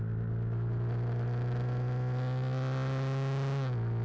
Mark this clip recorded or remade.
recorded